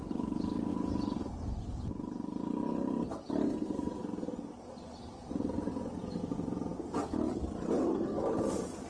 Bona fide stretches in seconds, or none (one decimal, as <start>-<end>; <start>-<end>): 0.0-8.9